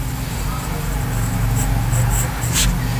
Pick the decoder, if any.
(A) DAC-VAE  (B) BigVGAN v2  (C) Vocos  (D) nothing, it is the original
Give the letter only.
D